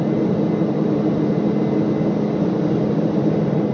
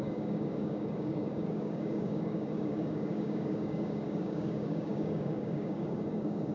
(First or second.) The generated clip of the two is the second